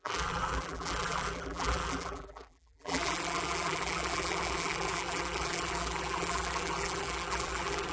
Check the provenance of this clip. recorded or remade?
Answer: remade